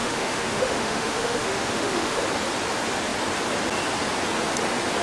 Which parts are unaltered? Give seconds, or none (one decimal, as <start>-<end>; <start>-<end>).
2.2-5.0